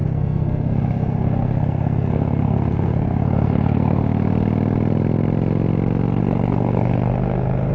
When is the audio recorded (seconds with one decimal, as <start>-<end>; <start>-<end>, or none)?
4.0-6.2